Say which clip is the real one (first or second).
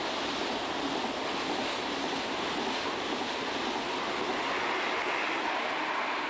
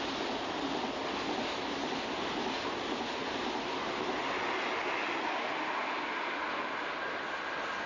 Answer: second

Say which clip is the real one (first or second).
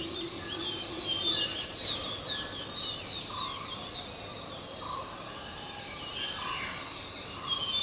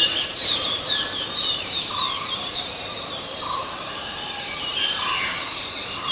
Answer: first